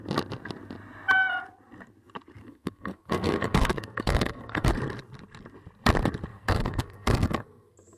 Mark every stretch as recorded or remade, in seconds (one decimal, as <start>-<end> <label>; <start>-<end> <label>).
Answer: 0.0-2.4 recorded; 2.4-4.7 remade; 4.7-6.3 recorded; 6.3-8.0 remade